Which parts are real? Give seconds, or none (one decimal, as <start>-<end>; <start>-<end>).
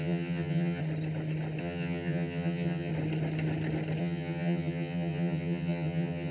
0.8-1.6; 2.9-4.0